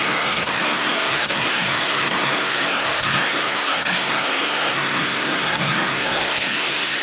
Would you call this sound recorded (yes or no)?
no